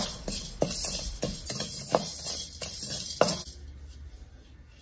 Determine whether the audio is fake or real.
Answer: real